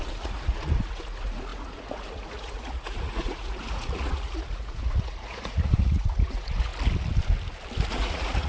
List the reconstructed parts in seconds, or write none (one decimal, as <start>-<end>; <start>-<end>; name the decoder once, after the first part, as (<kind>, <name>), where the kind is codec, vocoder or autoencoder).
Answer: 0.0-6.7 (vocoder, Vocos); 7.9-8.5